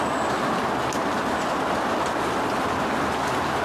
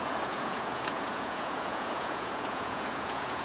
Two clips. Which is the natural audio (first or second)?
first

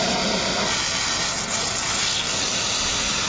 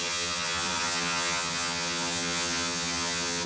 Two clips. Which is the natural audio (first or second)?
first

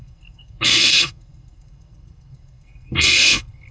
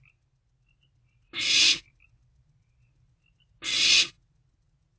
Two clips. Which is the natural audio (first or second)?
second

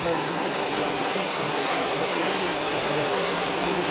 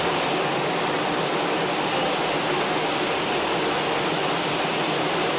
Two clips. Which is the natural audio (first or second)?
second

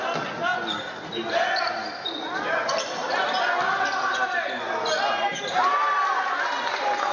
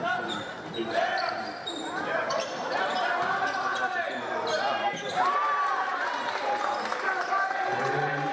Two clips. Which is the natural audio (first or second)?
first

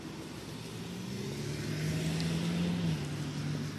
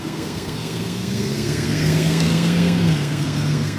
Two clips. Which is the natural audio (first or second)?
first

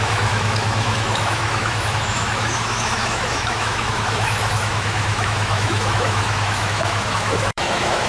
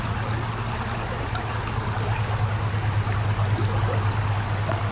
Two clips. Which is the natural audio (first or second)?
second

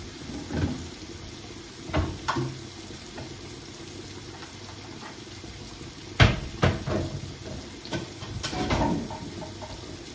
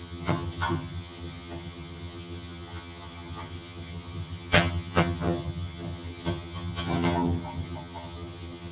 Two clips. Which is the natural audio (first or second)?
first